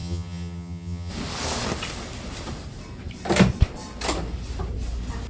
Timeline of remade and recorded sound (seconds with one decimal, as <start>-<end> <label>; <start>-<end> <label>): 0.0-1.1 remade; 1.1-5.3 recorded